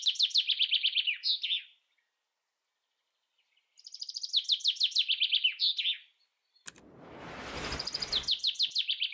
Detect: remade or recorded recorded